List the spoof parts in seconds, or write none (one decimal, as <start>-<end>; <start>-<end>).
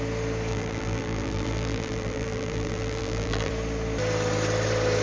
0.5-3.5